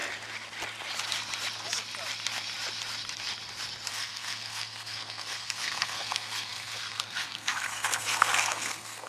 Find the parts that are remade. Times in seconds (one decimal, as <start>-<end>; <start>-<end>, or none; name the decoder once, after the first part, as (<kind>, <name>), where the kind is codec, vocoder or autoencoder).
3.9-9.1 (codec, SNAC)